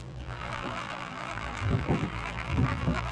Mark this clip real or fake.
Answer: fake